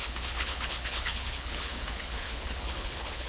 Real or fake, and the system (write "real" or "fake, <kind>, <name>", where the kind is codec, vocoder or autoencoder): fake, codec, HILCodec